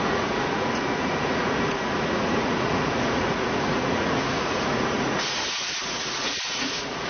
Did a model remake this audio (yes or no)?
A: yes